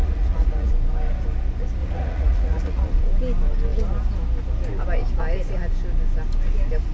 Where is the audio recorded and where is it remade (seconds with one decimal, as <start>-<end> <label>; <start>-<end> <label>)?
0.0-0.7 remade; 0.7-1.8 recorded; 1.8-3.0 remade; 3.0-6.9 recorded